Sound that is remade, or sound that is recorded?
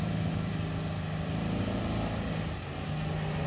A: recorded